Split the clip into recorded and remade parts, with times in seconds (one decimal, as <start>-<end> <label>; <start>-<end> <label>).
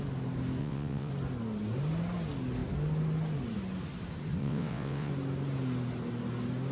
0.0-0.6 recorded; 0.6-1.1 remade; 1.1-4.4 recorded; 4.4-5.1 remade; 5.1-6.7 recorded